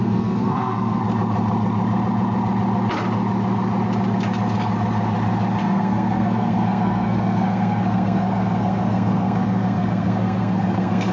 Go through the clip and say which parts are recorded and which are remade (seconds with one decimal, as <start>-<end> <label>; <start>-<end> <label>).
0.0-1.0 remade; 1.0-5.6 recorded; 5.6-11.1 remade